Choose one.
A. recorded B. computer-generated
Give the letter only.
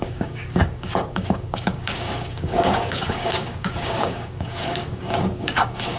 B